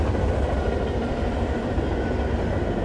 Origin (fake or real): real